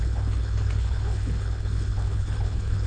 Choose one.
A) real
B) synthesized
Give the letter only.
B